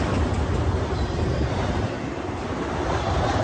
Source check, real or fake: real